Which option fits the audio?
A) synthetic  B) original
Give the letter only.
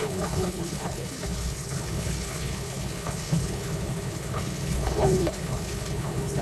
A